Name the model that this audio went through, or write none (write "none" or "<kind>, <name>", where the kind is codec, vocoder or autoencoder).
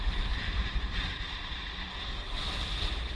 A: vocoder, BigVGAN v2